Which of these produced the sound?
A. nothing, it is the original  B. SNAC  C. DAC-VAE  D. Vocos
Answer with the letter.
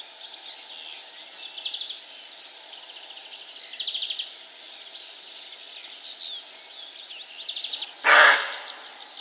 A